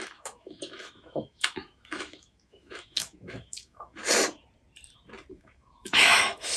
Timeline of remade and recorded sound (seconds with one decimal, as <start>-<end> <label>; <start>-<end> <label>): 0.0-4.0 remade; 4.0-5.3 recorded; 5.3-6.6 remade